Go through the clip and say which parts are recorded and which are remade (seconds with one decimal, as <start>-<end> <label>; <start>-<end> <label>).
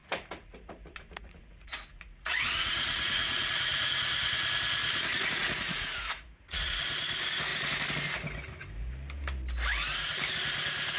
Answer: 0.0-4.5 remade; 4.5-5.4 recorded; 5.4-6.8 remade; 6.8-11.0 recorded